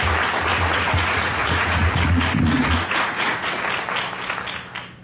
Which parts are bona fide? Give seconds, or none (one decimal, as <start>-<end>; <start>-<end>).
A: 0.0-0.5; 3.5-5.0